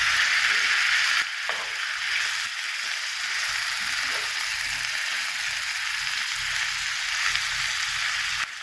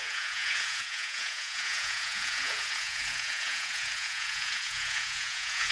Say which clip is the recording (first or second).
first